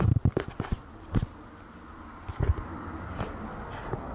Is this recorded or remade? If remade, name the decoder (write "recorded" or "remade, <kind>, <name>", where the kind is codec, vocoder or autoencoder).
recorded